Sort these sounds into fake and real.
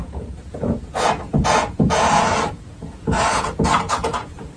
fake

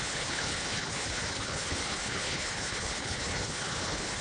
fake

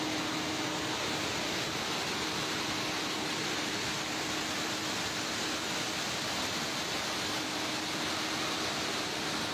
real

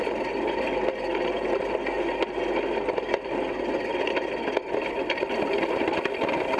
real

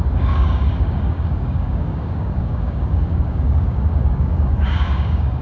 fake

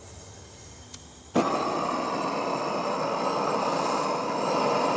real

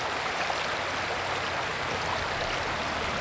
real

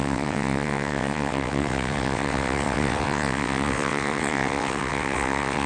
fake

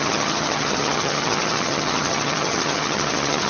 fake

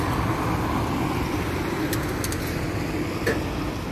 real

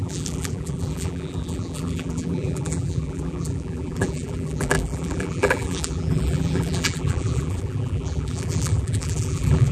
fake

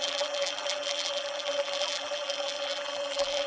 fake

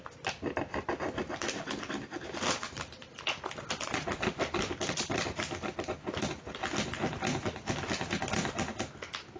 real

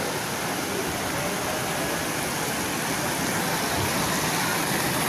real